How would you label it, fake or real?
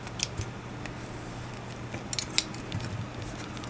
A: real